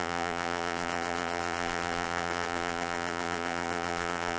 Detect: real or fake fake